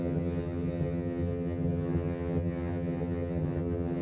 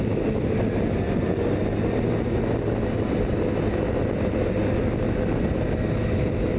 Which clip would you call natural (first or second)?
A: second